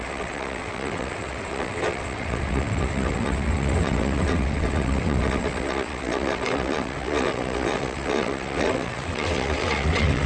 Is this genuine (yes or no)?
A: no